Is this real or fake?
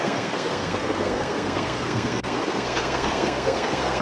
fake